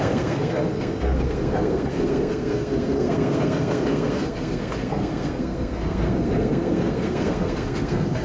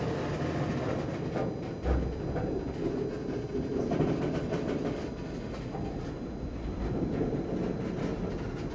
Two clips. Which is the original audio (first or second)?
second